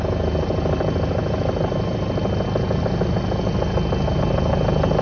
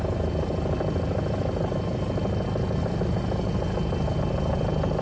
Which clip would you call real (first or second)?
first